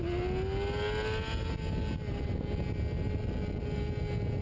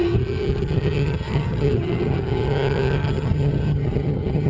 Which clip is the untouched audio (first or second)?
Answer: first